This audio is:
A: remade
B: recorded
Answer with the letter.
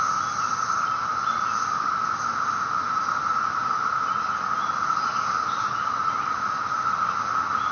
B